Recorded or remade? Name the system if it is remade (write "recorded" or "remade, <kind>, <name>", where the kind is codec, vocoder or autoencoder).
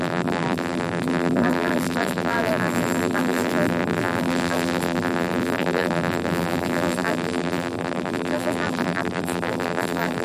remade, vocoder, BigVGAN v2